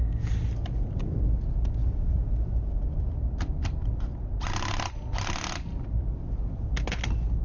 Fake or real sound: real